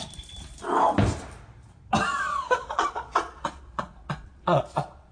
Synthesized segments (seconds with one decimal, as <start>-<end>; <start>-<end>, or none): 2.1-5.1